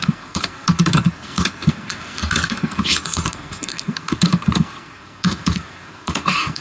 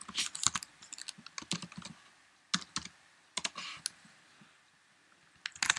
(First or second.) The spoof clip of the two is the first